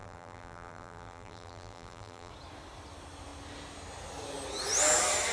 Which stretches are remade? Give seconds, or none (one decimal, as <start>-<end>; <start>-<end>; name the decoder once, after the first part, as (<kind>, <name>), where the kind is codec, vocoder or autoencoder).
0.0-2.3 (vocoder, BigVGAN v2)